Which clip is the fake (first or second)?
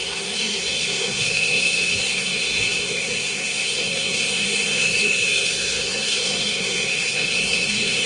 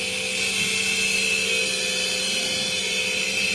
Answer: first